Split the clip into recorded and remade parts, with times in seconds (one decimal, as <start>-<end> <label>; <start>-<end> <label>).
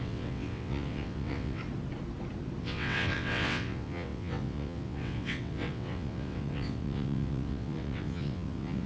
0.0-1.6 remade; 1.6-2.6 recorded; 2.6-8.9 remade